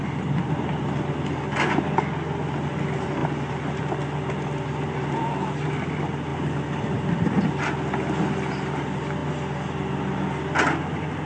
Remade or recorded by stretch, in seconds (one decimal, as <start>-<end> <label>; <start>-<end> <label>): 0.0-11.3 recorded